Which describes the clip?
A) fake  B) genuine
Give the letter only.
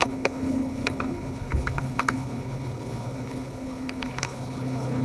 A